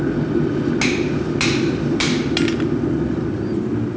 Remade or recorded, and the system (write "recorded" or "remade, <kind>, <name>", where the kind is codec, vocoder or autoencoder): recorded